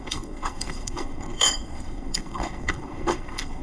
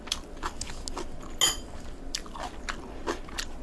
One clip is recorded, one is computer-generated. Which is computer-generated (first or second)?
first